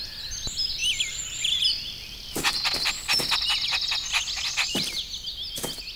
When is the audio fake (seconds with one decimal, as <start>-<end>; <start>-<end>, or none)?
none